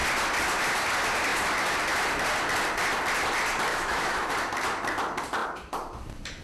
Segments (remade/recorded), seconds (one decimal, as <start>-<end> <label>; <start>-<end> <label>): 0.0-3.7 recorded; 3.7-4.3 remade; 4.3-6.4 recorded